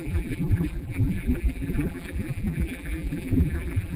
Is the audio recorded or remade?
remade